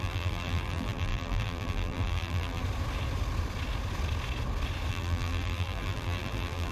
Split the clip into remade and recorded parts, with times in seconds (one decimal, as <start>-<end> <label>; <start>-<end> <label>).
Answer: 0.0-2.6 remade; 2.6-4.9 recorded; 4.9-6.7 remade